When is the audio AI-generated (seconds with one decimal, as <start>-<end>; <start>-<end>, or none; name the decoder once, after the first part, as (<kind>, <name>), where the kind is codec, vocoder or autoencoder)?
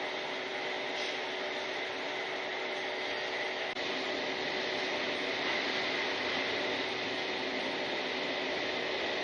none